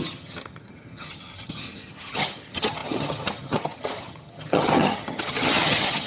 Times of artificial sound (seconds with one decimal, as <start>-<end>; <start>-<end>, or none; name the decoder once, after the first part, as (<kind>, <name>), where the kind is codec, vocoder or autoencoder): 0.0-6.1 (vocoder, HiFi-GAN)